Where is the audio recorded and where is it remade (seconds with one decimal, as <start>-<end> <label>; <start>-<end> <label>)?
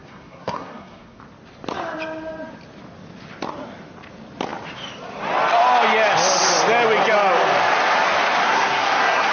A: 0.0-1.2 remade; 1.2-8.4 recorded; 8.4-9.3 remade